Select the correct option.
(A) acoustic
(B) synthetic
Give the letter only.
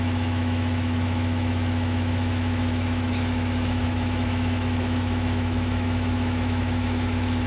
B